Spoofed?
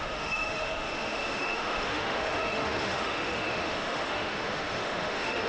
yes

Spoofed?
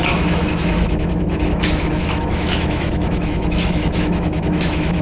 yes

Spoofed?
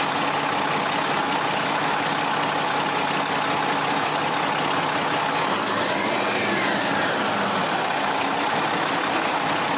no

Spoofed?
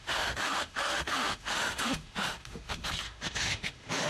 yes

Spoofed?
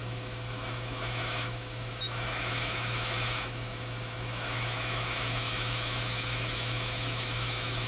yes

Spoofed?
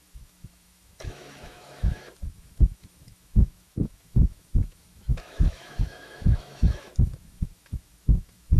yes